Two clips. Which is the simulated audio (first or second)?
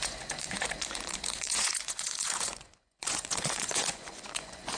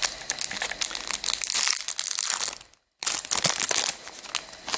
first